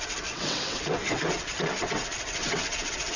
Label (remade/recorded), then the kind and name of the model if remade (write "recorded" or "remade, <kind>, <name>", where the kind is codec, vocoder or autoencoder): remade, vocoder, WaveNeXt